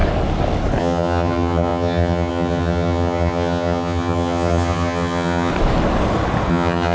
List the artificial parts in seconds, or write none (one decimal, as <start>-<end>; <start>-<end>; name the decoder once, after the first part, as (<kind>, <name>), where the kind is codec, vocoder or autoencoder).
0.8-5.5 (vocoder, HiFi-GAN); 6.5-6.9